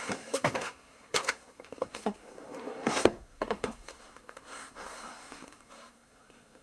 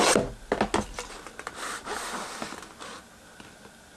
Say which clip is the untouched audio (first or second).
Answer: second